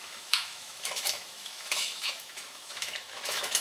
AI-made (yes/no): yes